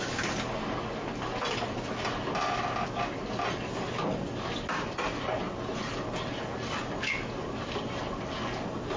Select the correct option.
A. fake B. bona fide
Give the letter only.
B